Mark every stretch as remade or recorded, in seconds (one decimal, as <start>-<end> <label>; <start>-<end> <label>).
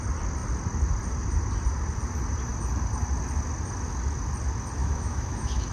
0.0-4.8 recorded; 4.8-5.7 remade